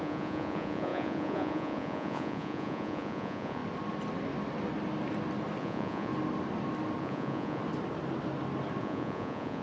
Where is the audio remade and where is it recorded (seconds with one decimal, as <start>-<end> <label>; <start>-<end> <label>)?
0.0-3.6 remade; 3.6-5.6 recorded; 5.6-6.1 remade; 6.1-7.0 recorded; 7.0-7.6 remade; 7.6-8.8 recorded; 8.8-9.6 remade